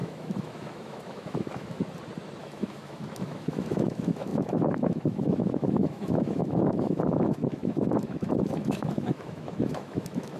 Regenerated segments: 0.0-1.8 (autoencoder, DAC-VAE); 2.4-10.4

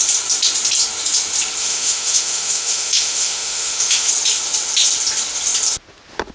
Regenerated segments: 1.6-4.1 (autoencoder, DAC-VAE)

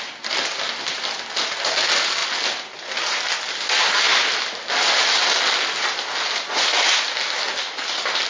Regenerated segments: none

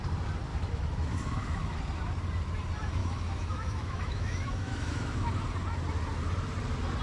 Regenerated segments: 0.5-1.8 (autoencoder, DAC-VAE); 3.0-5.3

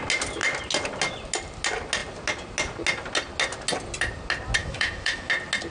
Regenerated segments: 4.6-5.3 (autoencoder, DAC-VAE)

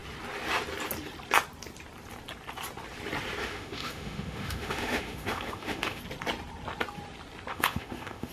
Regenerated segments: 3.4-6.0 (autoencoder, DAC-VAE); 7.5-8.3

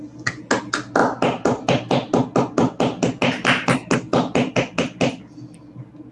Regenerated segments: none